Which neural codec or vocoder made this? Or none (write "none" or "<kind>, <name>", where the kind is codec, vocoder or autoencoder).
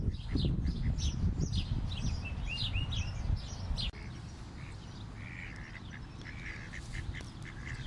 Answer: none